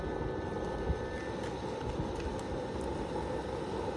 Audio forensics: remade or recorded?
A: recorded